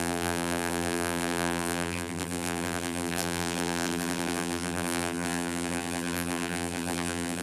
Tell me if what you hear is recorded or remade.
remade